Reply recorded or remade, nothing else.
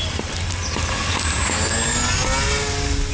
recorded